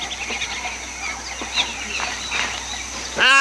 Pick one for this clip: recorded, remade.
recorded